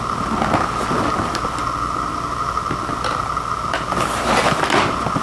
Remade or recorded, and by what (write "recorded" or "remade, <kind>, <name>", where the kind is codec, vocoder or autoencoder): recorded